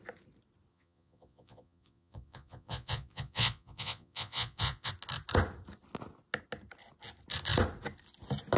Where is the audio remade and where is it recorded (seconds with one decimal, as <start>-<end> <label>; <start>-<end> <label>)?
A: 0.0-0.7 recorded; 0.7-4.9 remade; 4.9-8.6 recorded